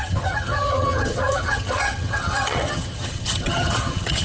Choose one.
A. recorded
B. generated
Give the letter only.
B